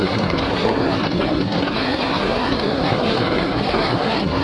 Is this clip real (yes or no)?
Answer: no